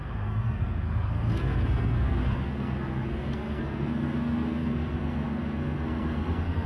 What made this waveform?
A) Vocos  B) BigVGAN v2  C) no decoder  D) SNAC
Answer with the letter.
D